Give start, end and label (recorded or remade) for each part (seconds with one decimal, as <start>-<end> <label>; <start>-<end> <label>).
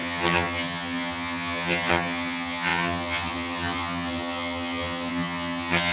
0.0-5.9 remade